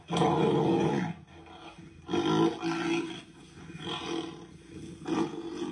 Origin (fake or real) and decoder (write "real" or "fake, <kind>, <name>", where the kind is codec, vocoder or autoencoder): real